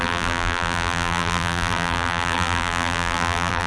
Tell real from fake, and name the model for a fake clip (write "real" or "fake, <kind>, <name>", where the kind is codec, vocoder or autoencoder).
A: fake, vocoder, BigVGAN v2